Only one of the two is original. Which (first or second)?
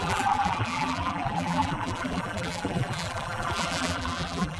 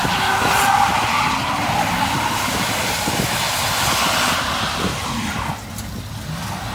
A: second